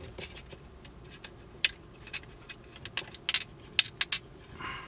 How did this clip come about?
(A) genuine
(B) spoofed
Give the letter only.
A